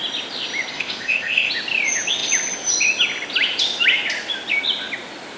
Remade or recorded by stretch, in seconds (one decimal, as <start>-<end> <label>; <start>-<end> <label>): 0.0-0.7 recorded; 0.7-1.5 remade; 1.5-5.4 recorded